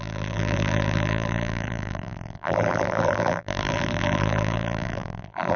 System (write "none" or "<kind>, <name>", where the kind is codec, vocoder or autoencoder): vocoder, BigVGAN v2